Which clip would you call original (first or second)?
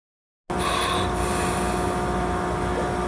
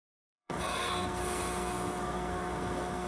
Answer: first